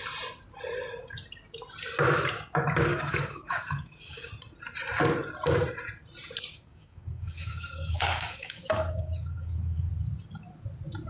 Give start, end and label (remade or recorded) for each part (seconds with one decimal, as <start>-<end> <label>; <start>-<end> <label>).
0.0-2.9 recorded; 2.9-4.3 remade; 4.3-6.5 recorded; 6.5-9.9 remade; 9.9-11.1 recorded